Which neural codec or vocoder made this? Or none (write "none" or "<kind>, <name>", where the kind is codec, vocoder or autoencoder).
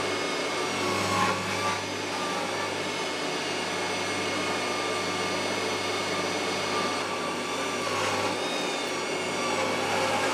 none